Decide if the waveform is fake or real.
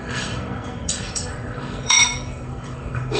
fake